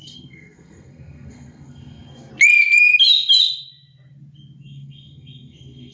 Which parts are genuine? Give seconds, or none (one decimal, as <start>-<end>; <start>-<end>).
2.3-4.6